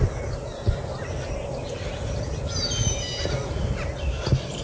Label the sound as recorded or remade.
recorded